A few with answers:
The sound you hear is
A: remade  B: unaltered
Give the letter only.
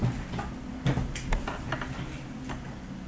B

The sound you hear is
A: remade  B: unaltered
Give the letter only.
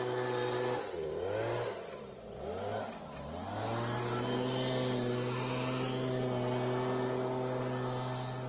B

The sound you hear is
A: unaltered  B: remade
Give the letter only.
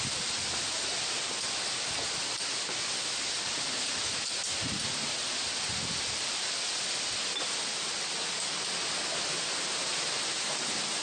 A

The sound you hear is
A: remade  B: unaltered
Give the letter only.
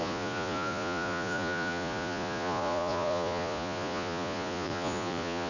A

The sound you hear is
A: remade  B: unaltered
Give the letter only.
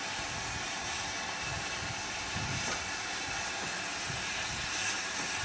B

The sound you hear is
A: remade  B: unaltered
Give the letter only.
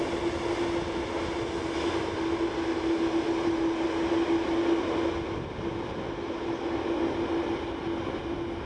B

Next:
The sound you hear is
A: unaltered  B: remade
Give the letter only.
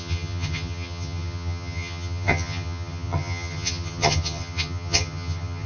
B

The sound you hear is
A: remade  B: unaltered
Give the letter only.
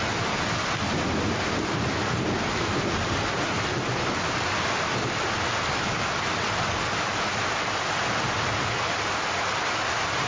B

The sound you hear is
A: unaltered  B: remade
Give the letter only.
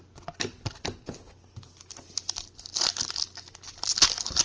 A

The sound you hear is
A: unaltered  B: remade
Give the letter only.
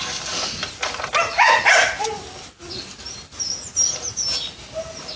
A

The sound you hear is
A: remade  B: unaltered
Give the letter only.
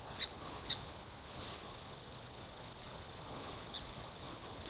A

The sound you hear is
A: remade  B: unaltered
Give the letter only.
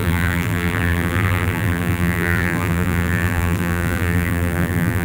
A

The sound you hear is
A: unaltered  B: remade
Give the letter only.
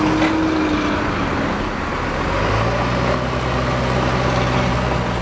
A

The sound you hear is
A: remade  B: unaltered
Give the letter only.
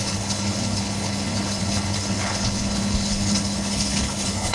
A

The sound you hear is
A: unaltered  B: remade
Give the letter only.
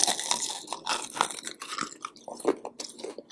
A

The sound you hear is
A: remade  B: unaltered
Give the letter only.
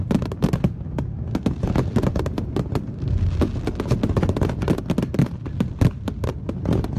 B